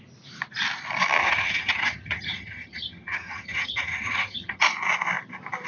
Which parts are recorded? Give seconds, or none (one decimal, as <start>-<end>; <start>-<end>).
0.0-1.2; 4.6-5.7